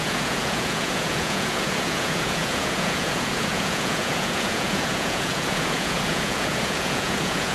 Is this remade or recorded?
remade